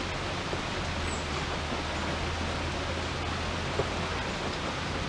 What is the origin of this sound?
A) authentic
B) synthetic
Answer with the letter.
A